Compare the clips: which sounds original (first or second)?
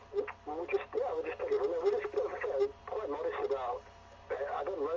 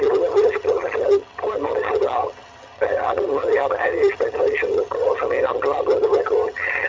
first